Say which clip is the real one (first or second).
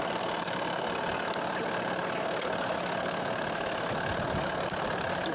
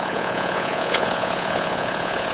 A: first